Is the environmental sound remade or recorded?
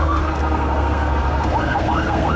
remade